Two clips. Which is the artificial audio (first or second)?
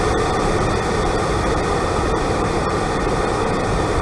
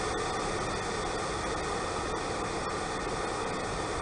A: first